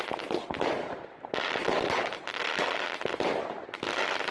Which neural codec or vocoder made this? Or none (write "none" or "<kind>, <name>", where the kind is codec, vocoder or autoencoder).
none